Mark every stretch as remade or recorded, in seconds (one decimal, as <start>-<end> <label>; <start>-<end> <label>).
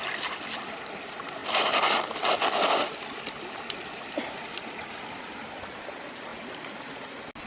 0.0-1.4 recorded; 1.4-5.4 remade; 5.4-7.5 recorded